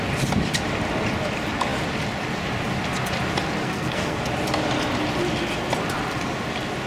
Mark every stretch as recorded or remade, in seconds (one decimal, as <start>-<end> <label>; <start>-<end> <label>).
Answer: 0.0-3.6 recorded; 3.6-4.2 remade; 4.2-6.9 recorded